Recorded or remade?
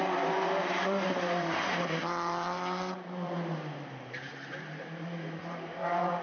remade